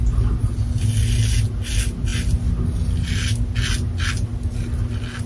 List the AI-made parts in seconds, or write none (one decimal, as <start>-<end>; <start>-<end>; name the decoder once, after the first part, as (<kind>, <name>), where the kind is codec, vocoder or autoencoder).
none